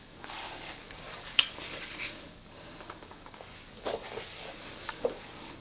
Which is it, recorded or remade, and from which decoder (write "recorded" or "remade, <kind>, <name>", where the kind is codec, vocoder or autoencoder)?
remade, codec, DAC